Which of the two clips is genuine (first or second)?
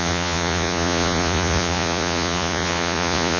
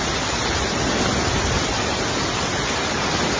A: second